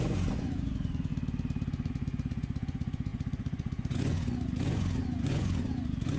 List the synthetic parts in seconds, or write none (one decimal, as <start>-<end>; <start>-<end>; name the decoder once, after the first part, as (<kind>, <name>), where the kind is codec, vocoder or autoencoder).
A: 0.0-1.1 (vocoder, Vocos); 1.9-6.2